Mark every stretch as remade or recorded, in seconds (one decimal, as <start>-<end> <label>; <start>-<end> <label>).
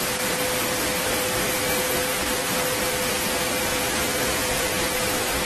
0.0-3.7 recorded; 3.7-4.7 remade; 4.7-5.4 recorded